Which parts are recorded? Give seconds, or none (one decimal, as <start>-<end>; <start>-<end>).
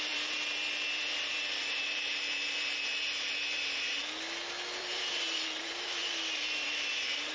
4.0-4.8